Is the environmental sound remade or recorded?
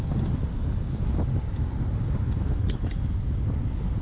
recorded